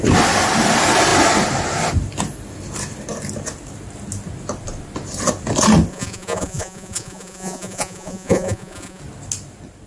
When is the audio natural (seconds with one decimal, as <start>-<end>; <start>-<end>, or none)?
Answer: 0.0-5.9; 9.0-9.9